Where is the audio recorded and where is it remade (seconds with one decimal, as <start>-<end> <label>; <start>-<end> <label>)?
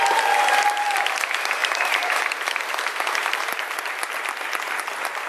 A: 0.0-5.3 recorded